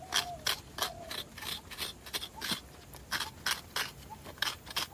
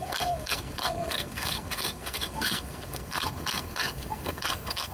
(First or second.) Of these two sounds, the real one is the first